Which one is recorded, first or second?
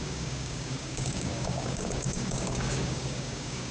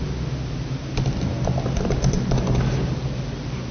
second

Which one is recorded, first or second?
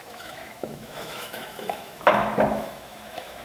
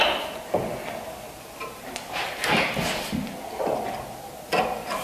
second